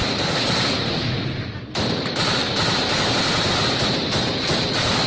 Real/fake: real